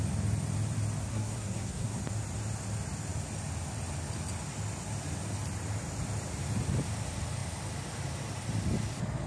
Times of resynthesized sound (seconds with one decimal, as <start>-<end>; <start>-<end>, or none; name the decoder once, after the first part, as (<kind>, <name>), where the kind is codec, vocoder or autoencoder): 1.1-2.0 (codec, SNAC)